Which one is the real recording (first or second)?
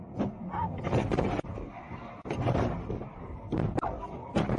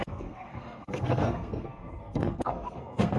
first